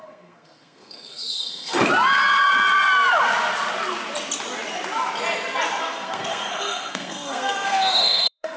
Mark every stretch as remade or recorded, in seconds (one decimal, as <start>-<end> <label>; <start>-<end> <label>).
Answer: 0.0-1.9 remade; 1.9-5.8 recorded; 5.8-8.6 remade